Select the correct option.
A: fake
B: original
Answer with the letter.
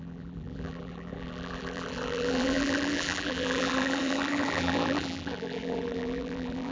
A